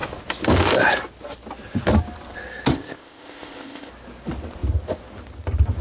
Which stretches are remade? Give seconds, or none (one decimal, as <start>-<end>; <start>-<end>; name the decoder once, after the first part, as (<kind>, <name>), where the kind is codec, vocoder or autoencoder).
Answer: 2.7-3.9 (codec, ZipCodec)